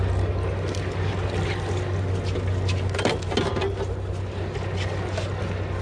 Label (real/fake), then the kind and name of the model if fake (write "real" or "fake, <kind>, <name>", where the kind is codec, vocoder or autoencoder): real